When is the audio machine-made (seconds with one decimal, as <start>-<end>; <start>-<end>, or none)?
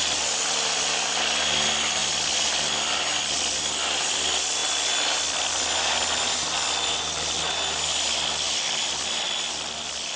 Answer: none